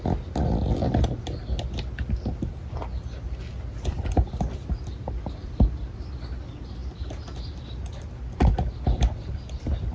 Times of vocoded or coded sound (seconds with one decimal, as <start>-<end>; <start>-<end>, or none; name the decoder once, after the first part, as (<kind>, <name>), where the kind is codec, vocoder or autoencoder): none